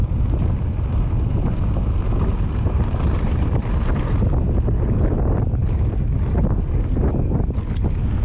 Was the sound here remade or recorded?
recorded